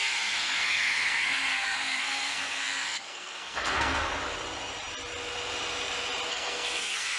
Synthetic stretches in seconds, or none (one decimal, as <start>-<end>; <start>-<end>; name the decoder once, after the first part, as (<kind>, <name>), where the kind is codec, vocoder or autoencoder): 0.0-4.1 (codec, SNAC); 6.3-7.2